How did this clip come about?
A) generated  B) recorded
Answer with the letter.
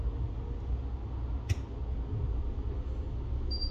B